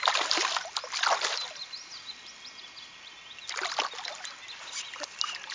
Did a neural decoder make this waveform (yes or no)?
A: no